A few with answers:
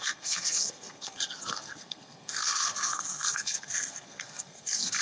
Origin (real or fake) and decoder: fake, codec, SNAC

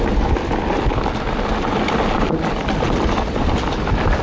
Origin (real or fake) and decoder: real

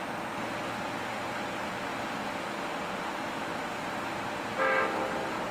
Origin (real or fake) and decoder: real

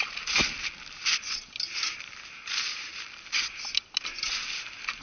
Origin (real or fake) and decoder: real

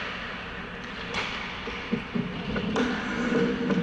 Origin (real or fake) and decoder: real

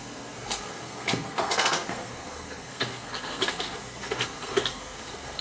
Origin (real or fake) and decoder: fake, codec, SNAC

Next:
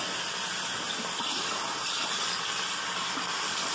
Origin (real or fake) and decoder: real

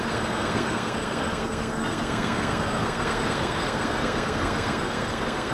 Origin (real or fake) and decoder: fake, codec, SNAC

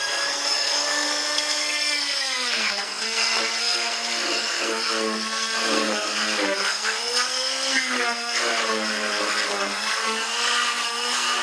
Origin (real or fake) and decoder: fake, codec, SNAC